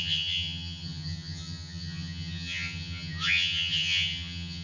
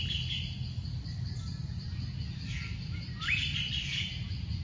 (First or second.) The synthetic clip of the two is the first